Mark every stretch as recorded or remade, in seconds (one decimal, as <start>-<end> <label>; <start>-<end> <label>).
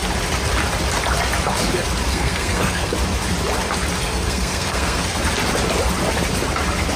0.0-2.1 recorded; 2.1-2.9 remade; 2.9-4.1 recorded; 4.1-5.2 remade; 5.2-7.0 recorded